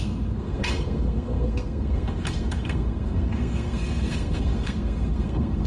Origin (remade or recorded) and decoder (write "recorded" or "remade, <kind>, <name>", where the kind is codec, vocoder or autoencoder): remade, codec, SNAC